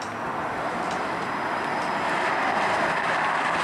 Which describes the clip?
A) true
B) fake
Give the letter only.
A